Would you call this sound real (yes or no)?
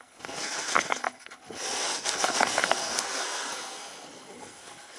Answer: no